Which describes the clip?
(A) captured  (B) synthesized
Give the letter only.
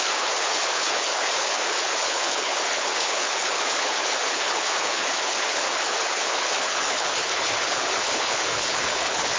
B